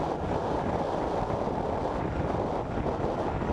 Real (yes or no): yes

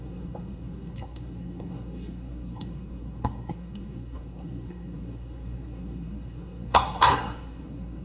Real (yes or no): no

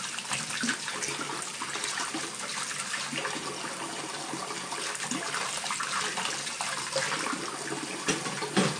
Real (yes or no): yes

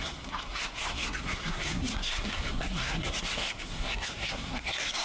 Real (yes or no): no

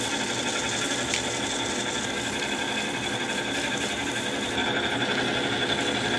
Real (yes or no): yes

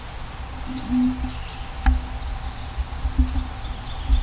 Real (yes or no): yes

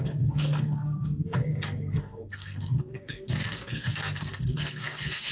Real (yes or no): no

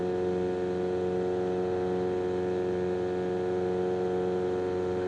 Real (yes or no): yes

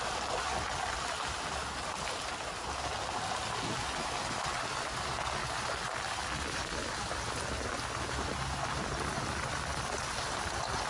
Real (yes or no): yes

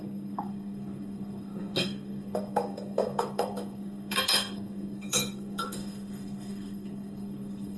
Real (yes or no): no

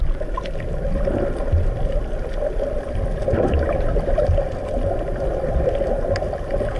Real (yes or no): yes